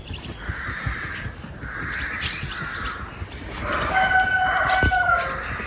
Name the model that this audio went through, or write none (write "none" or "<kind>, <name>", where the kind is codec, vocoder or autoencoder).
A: none